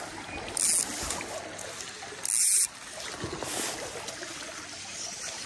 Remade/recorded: recorded